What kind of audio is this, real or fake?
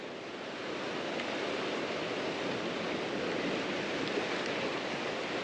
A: real